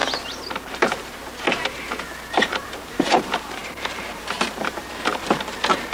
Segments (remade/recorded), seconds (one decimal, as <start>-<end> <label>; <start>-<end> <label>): 0.0-0.5 recorded; 0.5-1.2 remade; 1.2-2.5 recorded; 2.5-5.9 remade